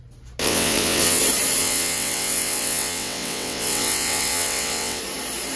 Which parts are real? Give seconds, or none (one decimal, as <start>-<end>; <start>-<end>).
0.0-0.4; 1.2-1.6; 5.0-5.6